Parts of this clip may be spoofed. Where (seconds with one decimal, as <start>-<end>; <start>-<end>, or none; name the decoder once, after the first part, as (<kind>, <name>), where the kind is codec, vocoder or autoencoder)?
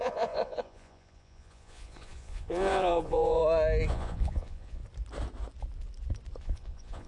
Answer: 0.0-3.4 (vocoder, Vocos); 3.9-4.8; 6.4-7.1